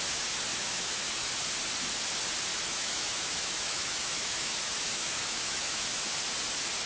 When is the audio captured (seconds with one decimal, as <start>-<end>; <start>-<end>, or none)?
0.0-0.5; 1.3-2.5; 6.0-6.9

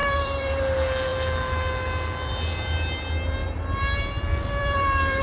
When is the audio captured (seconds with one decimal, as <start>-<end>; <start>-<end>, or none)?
0.6-3.4

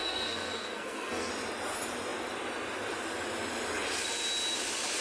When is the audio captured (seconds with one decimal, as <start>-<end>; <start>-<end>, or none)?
1.3-5.0

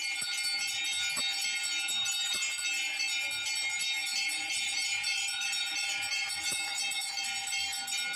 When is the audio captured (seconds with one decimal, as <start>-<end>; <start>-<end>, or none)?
0.0-4.0; 7.1-8.2

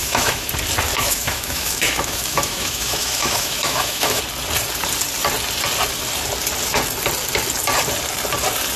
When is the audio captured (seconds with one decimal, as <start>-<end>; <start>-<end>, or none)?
0.5-0.9; 4.2-8.8

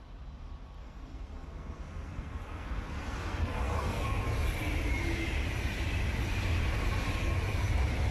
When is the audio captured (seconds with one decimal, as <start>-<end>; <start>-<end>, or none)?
0.0-0.8; 4.2-8.1

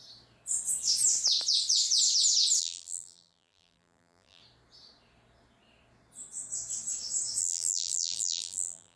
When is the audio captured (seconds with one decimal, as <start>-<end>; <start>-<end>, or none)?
0.0-2.6; 4.4-7.4

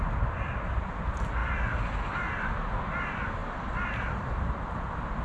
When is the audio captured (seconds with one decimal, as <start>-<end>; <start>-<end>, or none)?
0.0-3.4; 4.7-5.2